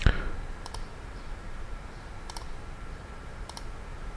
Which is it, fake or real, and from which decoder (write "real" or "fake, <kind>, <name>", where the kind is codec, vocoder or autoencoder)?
fake, vocoder, BigVGAN v2